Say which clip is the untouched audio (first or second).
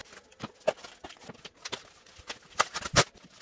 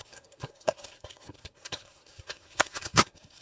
first